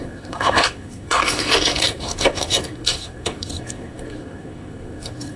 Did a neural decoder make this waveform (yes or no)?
yes